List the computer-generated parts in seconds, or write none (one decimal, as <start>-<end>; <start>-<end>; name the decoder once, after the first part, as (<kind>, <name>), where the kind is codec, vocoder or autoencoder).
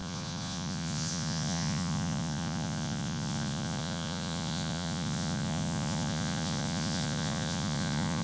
0.0-8.2 (vocoder, Vocos)